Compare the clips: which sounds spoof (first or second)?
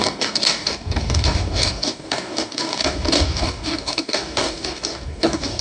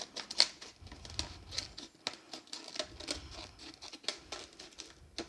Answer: first